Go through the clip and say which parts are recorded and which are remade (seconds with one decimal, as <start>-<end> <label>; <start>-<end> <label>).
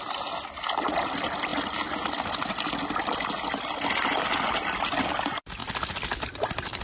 0.0-6.8 recorded